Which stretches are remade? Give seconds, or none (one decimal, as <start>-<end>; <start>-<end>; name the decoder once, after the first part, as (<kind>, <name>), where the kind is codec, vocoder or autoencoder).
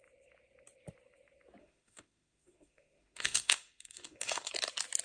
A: 1.6-4.5 (autoencoder, DAC-VAE)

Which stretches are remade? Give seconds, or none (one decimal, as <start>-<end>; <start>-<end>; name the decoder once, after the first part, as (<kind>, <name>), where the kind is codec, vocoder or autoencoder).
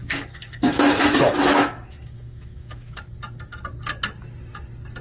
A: 0.0-3.0 (autoencoder, DAC-VAE)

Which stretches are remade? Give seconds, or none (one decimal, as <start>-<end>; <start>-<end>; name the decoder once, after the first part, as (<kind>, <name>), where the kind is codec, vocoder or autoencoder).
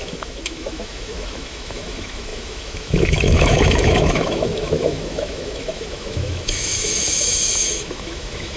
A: 0.0-8.6 (autoencoder, DAC-VAE)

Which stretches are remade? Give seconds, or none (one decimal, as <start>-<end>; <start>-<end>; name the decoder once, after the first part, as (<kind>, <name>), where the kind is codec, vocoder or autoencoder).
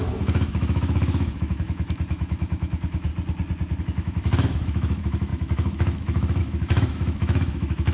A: 0.0-3.1 (autoencoder, DAC-VAE); 3.8-7.9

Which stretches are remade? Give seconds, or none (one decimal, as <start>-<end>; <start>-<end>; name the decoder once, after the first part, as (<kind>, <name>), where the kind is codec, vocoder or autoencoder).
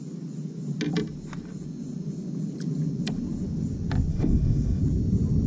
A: 4.1-4.8 (autoencoder, DAC-VAE)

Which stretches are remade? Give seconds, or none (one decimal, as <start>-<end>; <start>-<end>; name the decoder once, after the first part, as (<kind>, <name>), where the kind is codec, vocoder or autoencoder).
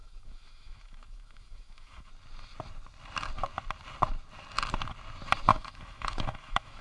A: 0.0-2.1 (autoencoder, DAC-VAE); 5.5-6.8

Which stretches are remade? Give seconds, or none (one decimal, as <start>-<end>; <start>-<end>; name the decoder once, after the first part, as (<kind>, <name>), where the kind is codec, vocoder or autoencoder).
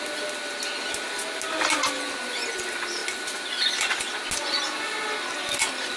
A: none